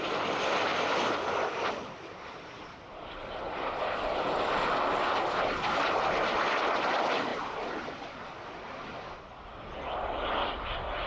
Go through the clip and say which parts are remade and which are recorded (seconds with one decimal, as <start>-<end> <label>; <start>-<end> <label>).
0.0-11.1 recorded